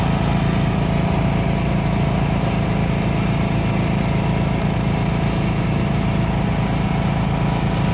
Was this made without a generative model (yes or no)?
yes